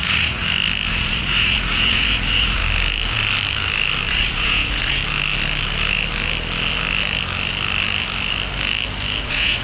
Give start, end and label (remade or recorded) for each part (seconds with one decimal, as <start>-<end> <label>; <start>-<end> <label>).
0.0-0.4 remade; 0.4-0.9 recorded; 0.9-2.6 remade; 2.6-4.1 recorded; 4.1-5.0 remade; 5.0-9.2 recorded; 9.2-9.6 remade